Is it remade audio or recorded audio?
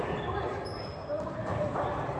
remade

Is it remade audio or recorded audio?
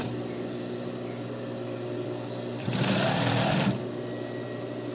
remade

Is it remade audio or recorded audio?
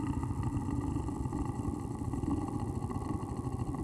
remade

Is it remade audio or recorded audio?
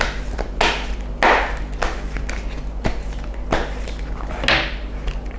recorded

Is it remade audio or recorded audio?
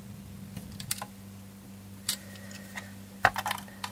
remade